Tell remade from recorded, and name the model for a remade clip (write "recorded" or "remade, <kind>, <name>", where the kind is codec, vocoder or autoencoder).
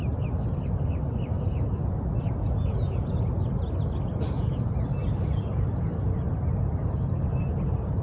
recorded